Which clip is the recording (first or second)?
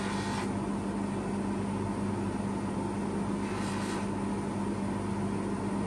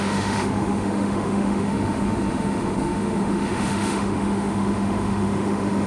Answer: first